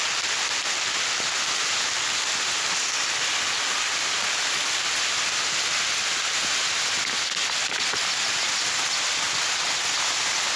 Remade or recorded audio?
recorded